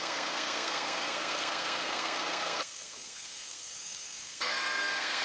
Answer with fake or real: fake